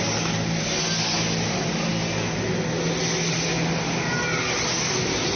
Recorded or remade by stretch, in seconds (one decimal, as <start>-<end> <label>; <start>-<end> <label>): 0.0-5.4 recorded